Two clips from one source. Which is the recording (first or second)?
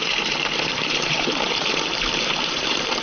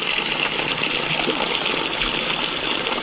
second